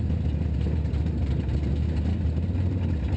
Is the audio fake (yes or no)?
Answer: no